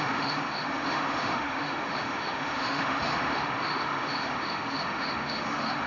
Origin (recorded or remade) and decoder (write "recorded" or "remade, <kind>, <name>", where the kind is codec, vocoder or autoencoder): remade, autoencoder, DAC-VAE